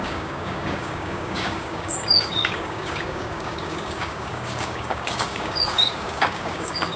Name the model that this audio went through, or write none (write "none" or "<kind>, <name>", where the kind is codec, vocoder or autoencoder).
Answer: codec, DAC